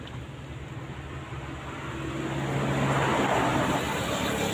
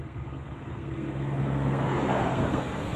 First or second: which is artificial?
second